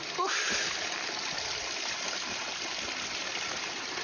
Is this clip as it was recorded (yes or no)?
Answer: yes